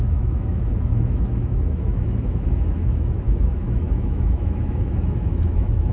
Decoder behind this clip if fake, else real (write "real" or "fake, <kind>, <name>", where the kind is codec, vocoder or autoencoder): fake, autoencoder, DAC-VAE